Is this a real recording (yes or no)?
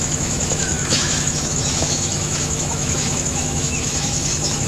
no